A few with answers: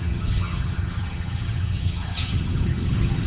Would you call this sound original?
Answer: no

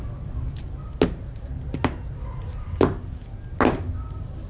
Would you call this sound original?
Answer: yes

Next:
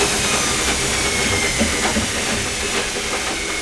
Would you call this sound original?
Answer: yes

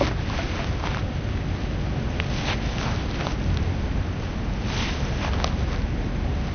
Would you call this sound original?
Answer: yes